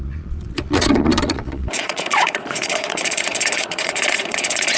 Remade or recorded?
remade